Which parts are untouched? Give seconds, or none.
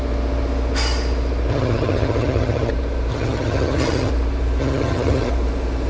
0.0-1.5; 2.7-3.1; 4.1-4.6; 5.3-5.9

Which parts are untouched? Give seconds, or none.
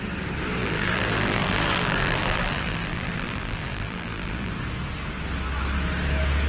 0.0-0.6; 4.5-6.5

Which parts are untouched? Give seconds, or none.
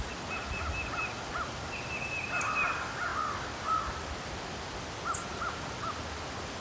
0.0-6.6